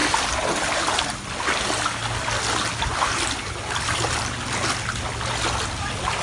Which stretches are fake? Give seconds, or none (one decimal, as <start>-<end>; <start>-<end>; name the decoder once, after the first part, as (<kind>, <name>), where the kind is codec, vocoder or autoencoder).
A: none